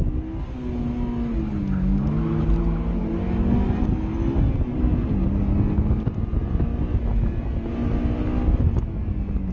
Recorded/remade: recorded